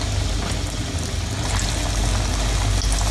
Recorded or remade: recorded